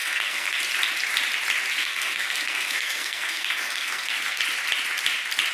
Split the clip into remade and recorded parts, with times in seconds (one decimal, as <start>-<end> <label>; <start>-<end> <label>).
0.0-0.6 remade; 0.6-1.8 recorded; 1.8-4.4 remade; 4.4-5.5 recorded